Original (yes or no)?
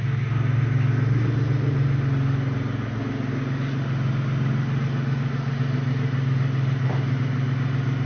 yes